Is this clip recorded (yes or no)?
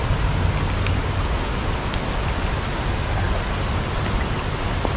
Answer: yes